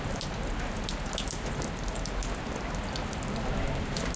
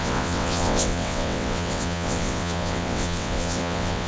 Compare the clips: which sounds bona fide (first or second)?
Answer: first